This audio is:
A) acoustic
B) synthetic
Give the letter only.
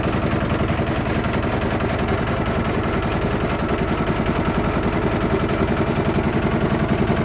A